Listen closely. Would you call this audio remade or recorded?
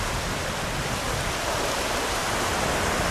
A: recorded